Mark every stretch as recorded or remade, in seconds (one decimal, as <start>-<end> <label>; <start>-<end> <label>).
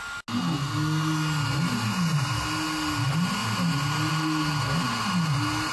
0.0-5.7 recorded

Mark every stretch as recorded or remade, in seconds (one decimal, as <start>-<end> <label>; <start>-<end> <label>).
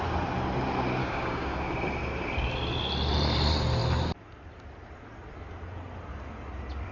0.0-1.0 recorded; 1.0-1.6 remade; 1.6-6.9 recorded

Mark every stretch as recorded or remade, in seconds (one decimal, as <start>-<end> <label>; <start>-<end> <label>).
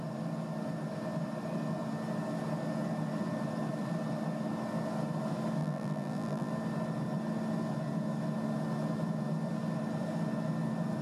0.0-5.6 recorded; 5.6-6.5 remade; 6.5-11.0 recorded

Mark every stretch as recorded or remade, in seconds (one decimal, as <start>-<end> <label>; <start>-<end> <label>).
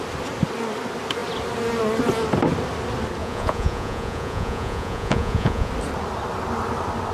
0.0-3.2 recorded; 3.2-5.7 remade; 5.7-7.1 recorded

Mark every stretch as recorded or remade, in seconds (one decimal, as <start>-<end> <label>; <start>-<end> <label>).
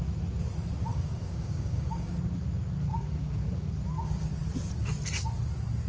0.0-0.9 recorded; 0.9-2.1 remade; 2.1-2.9 recorded; 2.9-3.7 remade; 3.7-5.9 recorded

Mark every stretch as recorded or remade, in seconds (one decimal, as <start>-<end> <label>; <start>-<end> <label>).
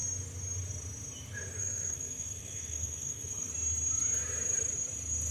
0.0-1.6 recorded; 1.6-3.5 remade; 3.5-5.3 recorded